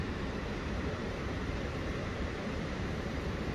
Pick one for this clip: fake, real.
fake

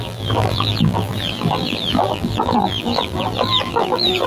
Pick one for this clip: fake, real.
fake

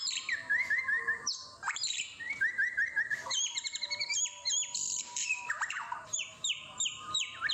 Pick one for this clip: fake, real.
fake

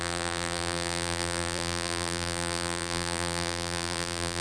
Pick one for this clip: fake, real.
fake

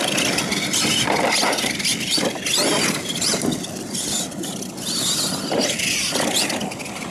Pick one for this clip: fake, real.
real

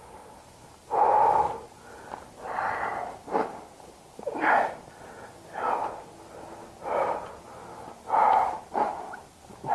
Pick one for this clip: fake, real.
real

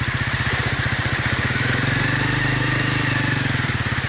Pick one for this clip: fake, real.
fake